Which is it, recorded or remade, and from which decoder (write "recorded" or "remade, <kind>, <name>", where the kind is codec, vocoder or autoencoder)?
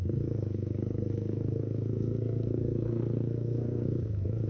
remade, codec, SNAC